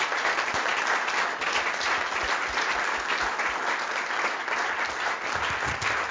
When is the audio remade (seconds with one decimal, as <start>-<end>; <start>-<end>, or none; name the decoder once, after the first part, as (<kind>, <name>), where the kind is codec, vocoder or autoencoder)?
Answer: none